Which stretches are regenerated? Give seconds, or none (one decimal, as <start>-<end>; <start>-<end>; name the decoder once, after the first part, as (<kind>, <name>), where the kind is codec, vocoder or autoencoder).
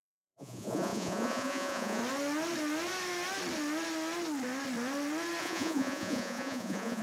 0.0-2.0 (vocoder, Vocos); 5.4-7.0